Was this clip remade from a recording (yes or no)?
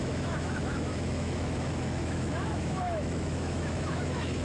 yes